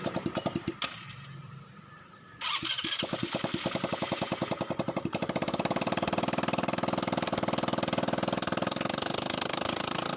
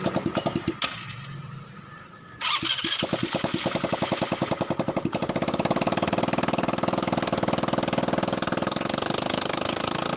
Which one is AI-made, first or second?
first